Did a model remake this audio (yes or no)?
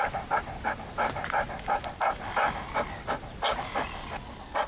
no